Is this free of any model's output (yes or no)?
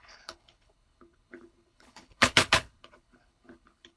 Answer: no